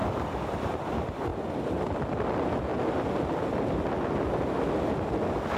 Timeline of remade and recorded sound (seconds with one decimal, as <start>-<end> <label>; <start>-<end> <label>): 0.0-5.6 recorded

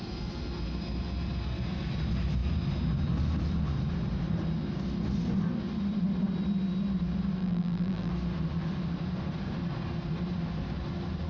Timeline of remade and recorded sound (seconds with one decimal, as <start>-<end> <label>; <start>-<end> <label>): 0.0-7.4 recorded; 7.4-8.1 remade; 8.1-11.3 recorded